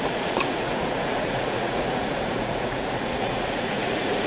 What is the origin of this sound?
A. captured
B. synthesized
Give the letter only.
B